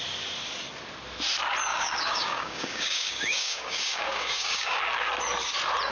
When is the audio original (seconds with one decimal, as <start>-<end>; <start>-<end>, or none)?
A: 0.0-1.7; 4.8-5.9